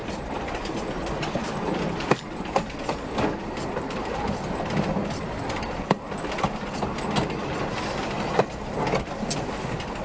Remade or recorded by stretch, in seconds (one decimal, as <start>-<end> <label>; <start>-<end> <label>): 0.0-10.0 recorded